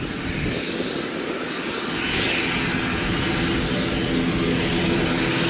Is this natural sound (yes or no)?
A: yes